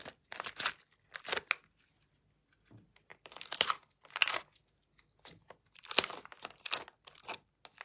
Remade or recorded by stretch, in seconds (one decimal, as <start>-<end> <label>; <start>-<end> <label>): 0.0-7.8 recorded